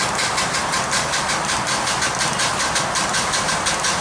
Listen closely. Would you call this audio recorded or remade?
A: recorded